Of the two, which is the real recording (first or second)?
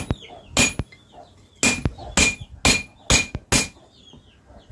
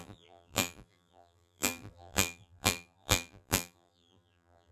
first